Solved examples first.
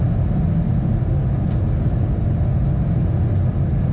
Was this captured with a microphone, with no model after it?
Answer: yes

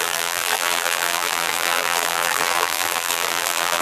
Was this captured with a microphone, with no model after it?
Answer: no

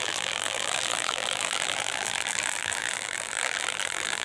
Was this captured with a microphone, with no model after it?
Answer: no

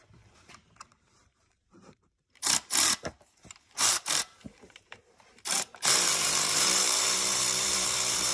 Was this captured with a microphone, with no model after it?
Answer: no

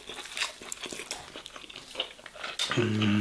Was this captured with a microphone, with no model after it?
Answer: yes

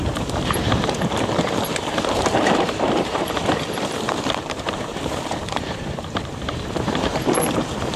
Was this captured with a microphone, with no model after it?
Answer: no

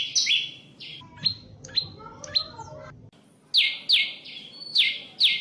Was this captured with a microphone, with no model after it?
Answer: yes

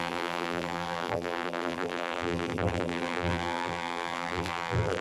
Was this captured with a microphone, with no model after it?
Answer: no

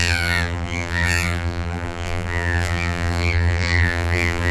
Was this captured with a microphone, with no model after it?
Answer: no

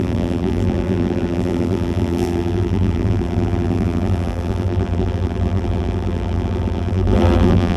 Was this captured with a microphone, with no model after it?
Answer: no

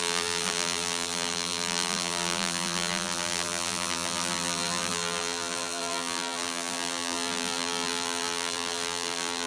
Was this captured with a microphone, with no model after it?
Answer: no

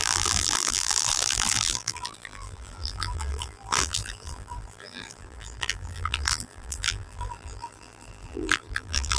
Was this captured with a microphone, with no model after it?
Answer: no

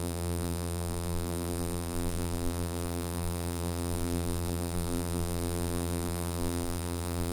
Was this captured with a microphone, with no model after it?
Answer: no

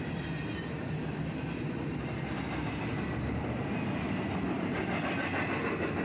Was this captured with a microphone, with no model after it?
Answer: yes